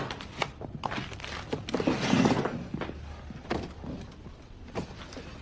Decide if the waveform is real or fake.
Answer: real